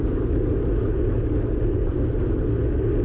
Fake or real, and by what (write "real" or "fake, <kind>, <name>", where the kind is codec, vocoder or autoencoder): real